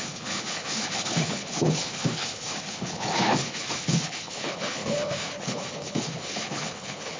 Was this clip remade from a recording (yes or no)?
yes